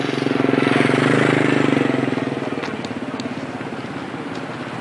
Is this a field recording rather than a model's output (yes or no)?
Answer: yes